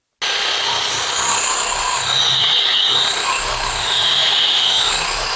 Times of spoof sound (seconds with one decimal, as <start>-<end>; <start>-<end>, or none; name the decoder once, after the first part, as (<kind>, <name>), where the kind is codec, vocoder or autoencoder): 3.8-4.9 (autoencoder, DAC-VAE)